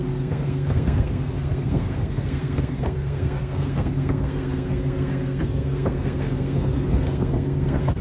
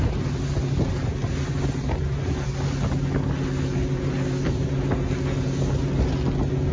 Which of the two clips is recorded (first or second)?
second